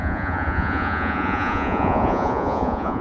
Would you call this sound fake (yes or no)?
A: yes